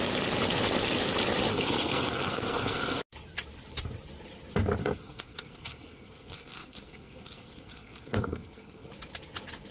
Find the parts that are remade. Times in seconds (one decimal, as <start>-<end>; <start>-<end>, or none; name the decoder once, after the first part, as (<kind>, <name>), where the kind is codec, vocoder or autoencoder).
1.5-3.0 (codec, SNAC); 4.8-8.9